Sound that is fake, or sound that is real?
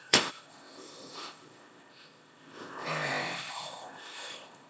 fake